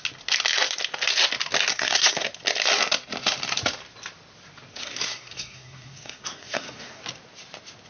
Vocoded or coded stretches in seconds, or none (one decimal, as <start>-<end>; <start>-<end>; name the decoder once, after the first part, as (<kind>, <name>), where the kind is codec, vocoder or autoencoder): 1.7-2.3 (codec, SNAC); 4.7-7.0